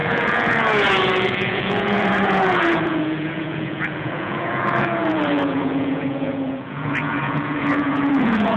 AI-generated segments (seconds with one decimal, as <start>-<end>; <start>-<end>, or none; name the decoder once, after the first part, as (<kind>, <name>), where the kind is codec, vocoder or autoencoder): 0.0-8.6 (vocoder, Vocos)

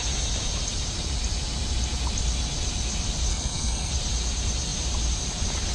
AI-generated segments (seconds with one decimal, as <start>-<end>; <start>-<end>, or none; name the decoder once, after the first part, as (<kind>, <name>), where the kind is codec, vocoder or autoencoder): 3.3-3.9 (codec, SNAC)

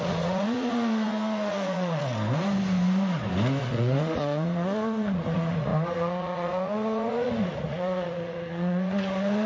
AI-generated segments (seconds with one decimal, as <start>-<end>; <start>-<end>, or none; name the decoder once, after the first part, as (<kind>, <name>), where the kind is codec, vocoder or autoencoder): 0.0-2.0 (vocoder, Vocos); 3.6-9.5

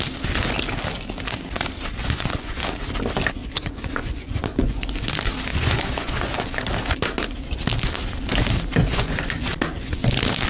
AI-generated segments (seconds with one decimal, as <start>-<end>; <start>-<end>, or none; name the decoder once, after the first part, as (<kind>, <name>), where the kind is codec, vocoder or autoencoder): 2.0-2.6 (vocoder, Vocos); 3.4-5.1; 5.5-6.6; 8.8-9.5